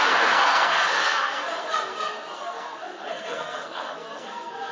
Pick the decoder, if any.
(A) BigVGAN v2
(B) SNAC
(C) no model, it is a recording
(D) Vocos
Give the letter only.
B